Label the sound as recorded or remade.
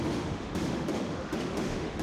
remade